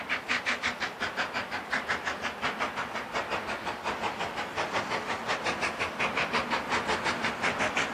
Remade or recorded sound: recorded